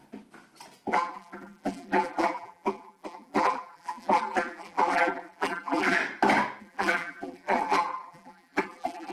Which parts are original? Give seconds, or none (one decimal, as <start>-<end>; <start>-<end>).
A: 0.0-0.9; 6.0-6.6